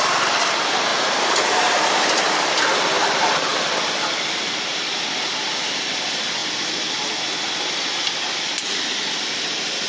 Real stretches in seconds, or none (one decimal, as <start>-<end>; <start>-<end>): 0.0-0.9; 2.2-9.9